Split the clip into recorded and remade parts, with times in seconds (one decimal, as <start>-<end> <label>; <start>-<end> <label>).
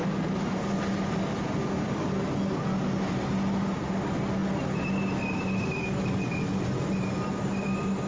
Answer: 0.0-5.8 recorded; 5.8-6.5 remade; 6.5-8.1 recorded